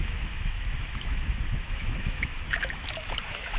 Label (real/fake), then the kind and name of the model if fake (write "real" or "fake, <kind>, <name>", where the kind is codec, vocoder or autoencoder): fake, autoencoder, DAC-VAE